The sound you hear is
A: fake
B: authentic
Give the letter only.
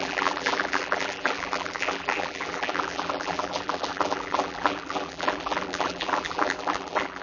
A